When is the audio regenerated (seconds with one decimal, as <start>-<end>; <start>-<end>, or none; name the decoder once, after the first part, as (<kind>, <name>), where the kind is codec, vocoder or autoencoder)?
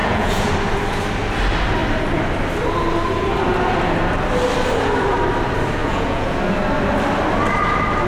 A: 0.0-0.5 (vocoder, Vocos); 5.8-6.4